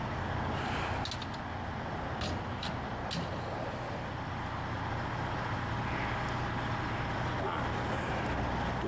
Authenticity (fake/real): real